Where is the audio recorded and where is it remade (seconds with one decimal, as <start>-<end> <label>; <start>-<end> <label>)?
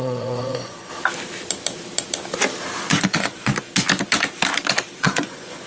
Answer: 0.0-0.9 remade; 0.9-2.9 recorded; 2.9-3.5 remade; 3.5-5.0 recorded; 5.0-5.7 remade